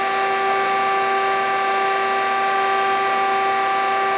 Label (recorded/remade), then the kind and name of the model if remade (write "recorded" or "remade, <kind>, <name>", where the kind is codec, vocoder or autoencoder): recorded